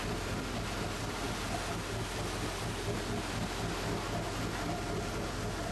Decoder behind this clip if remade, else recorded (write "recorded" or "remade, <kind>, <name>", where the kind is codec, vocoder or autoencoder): recorded